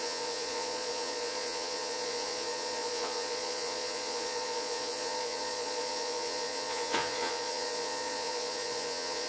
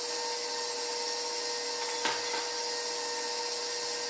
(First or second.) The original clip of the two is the second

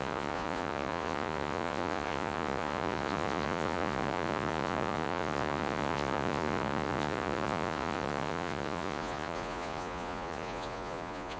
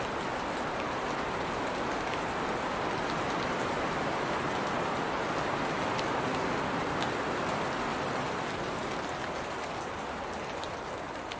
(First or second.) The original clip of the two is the second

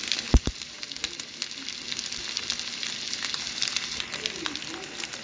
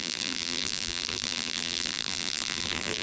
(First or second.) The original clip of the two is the first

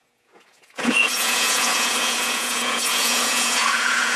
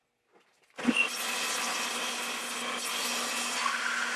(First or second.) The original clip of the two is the second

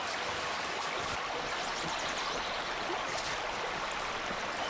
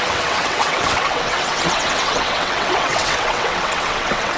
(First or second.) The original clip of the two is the first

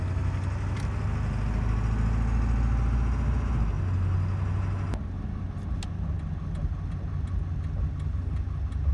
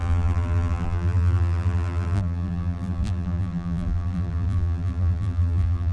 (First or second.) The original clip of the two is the first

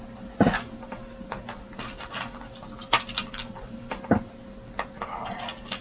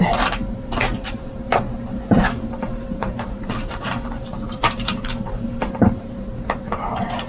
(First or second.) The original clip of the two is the first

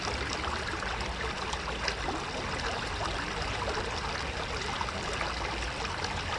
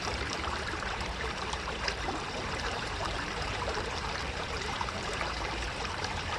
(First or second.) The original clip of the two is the first